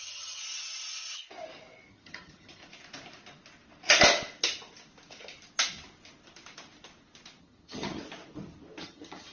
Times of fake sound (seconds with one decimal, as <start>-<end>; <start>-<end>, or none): 0.0-0.4; 1.9-2.6; 7.4-8.0; 8.8-9.3